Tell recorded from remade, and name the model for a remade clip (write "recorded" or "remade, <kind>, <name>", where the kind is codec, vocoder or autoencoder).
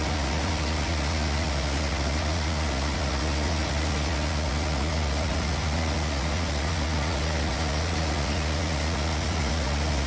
remade, vocoder, Vocos